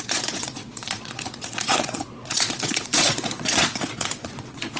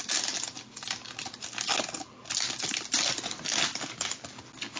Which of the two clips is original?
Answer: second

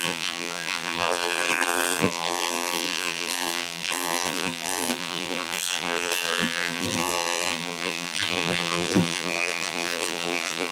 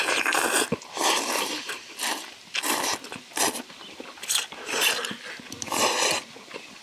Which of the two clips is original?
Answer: second